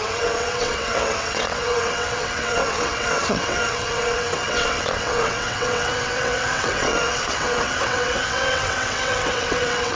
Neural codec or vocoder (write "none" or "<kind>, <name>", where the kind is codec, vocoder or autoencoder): vocoder, WaveNeXt